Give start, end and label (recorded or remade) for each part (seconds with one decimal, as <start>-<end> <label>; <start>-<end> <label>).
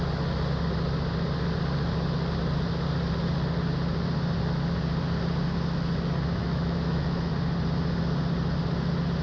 0.0-6.4 recorded; 6.4-7.3 remade; 7.3-9.2 recorded